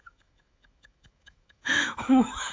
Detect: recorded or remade remade